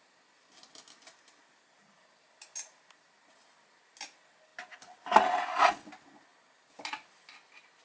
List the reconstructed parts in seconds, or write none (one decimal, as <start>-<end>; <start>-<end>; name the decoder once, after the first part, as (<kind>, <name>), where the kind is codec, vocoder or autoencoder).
none